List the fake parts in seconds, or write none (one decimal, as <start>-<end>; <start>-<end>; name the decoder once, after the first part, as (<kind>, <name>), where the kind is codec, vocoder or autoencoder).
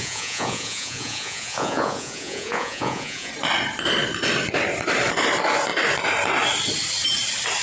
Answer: 0.0-3.3 (vocoder, Vocos)